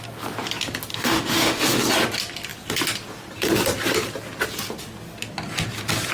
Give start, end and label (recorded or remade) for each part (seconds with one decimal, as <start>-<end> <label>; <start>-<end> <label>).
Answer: 0.0-0.9 recorded; 0.9-1.9 remade; 1.9-6.1 recorded